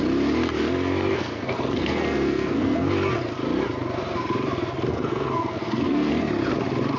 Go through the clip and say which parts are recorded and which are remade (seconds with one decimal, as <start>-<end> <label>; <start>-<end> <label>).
0.0-1.1 recorded; 1.1-2.9 remade; 2.9-4.9 recorded; 4.9-6.1 remade; 6.1-7.0 recorded